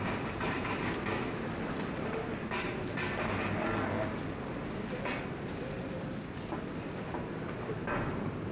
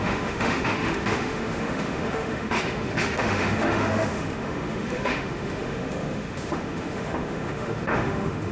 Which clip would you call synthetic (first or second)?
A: second